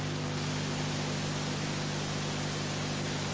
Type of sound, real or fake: real